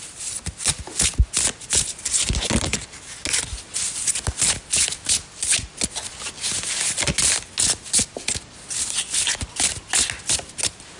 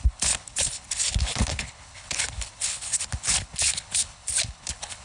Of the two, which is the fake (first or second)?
second